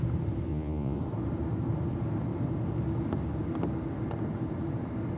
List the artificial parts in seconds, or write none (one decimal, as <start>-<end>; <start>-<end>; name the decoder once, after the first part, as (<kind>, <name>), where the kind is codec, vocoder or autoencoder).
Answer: 0.5-1.0 (vocoder, Vocos)